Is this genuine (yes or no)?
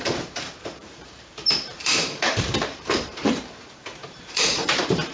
no